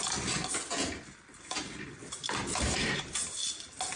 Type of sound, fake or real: real